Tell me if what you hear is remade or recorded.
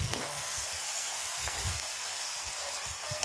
remade